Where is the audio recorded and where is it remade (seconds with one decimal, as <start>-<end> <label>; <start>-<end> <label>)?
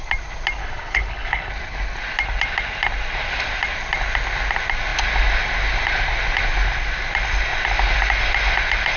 0.0-0.6 recorded; 0.6-1.5 remade; 1.5-9.0 recorded